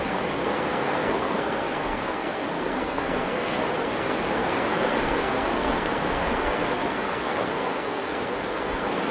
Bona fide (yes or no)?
no